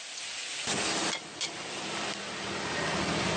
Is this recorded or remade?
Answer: recorded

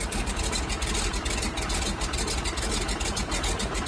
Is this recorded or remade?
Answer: recorded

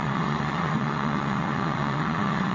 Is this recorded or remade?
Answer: remade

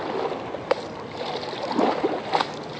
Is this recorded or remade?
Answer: recorded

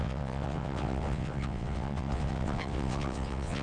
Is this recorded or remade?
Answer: remade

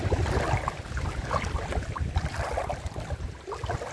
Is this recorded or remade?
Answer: recorded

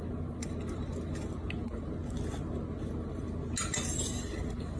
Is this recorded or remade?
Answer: recorded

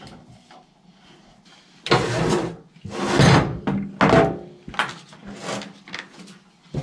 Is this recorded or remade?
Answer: recorded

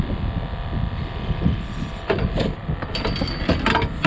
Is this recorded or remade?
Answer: recorded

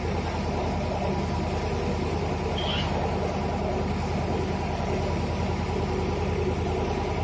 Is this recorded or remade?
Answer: recorded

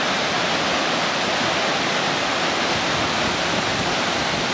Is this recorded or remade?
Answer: recorded